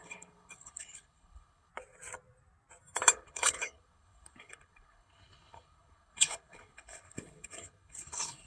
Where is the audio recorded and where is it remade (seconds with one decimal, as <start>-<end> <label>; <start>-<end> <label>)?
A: 0.0-1.7 remade; 1.7-3.1 recorded; 3.1-8.5 remade